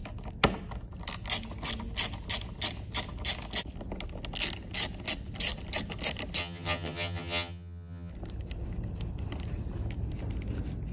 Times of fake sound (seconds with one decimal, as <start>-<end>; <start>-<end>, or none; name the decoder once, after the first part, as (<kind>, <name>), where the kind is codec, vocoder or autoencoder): 6.4-8.1 (vocoder, HiFi-GAN)